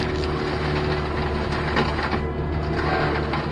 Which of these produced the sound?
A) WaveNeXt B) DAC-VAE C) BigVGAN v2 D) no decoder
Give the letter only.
D